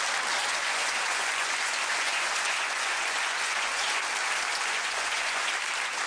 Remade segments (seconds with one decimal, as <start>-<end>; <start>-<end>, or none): 0.4-4.0; 4.5-5.5